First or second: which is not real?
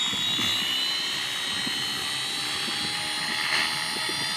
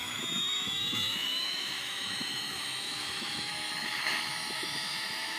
second